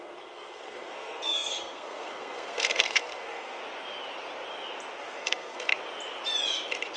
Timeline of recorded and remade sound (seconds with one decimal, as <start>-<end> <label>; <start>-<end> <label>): 0.0-3.6 remade; 3.6-5.0 recorded; 5.0-5.7 remade; 5.7-7.0 recorded